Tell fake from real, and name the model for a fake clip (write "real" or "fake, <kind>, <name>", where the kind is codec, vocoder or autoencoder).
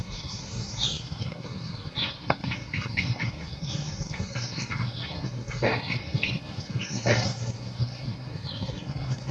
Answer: fake, codec, SNAC